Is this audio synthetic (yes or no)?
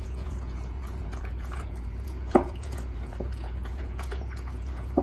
yes